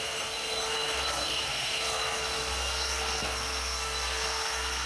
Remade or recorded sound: remade